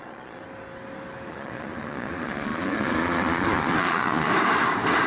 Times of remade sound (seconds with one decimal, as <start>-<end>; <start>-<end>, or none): 0.0-0.4; 1.3-4.3